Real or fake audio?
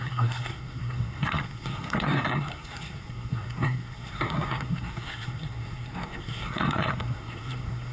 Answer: fake